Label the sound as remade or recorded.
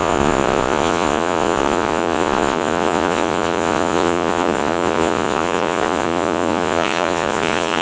remade